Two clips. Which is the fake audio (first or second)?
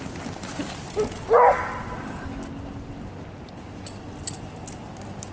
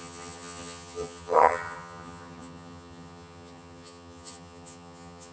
second